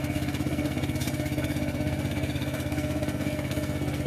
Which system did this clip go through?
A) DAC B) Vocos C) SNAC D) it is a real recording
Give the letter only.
C